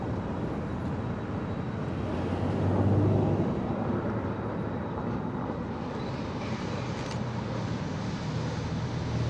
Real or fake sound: real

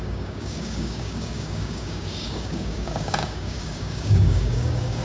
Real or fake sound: fake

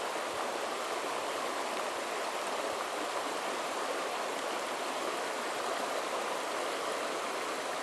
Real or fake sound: real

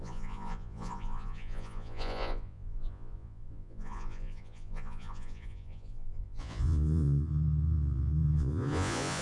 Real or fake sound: fake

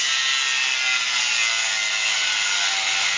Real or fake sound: real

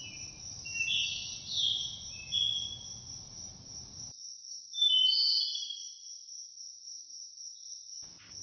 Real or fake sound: real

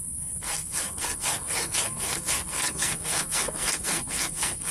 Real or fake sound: fake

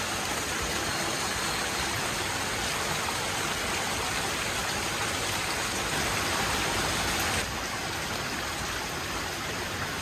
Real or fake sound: real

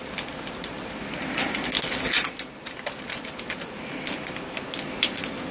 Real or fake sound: real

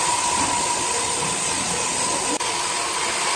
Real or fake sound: real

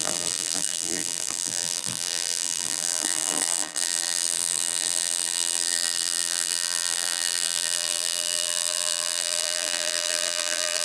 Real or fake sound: fake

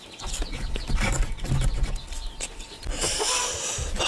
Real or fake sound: real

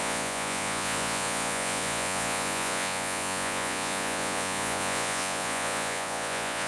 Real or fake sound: fake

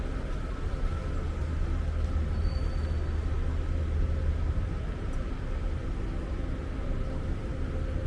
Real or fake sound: real